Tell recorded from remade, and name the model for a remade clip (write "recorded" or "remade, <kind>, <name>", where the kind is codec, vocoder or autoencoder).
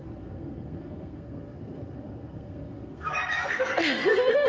remade, codec, SNAC